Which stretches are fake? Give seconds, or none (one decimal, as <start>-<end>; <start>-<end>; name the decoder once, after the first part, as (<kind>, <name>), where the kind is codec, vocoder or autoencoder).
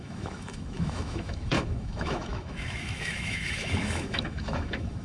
0.0-5.0 (autoencoder, DAC-VAE)